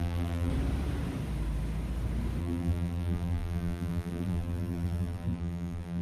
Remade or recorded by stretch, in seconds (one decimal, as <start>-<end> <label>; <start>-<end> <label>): 0.0-0.5 remade; 0.5-2.4 recorded; 2.4-6.0 remade